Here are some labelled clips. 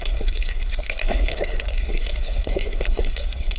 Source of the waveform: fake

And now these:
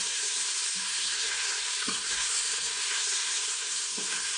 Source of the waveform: fake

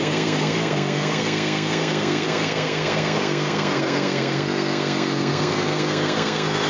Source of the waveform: fake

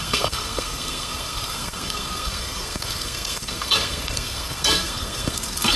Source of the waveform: fake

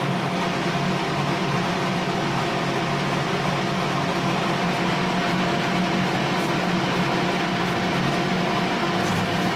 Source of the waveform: real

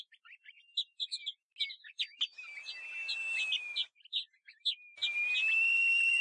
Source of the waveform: real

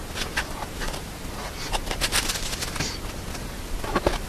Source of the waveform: real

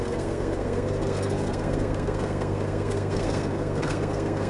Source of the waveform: fake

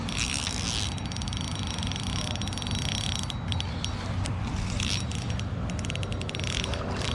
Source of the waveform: real